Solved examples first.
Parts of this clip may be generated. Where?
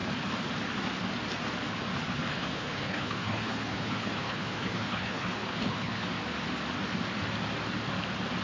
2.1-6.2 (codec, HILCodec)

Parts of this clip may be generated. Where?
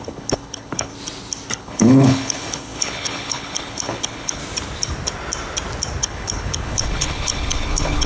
0.0-0.9 (codec, HILCodec); 1.5-4.4; 6.0-8.1